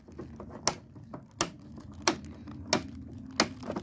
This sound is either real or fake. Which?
real